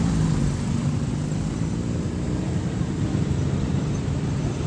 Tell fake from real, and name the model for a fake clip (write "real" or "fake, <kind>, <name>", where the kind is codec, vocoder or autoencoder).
fake, vocoder, BigVGAN v2